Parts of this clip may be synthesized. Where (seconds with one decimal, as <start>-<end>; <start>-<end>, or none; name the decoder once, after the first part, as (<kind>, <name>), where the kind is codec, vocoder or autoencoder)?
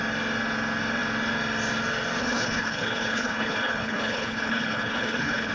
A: 2.2-5.5 (codec, HILCodec)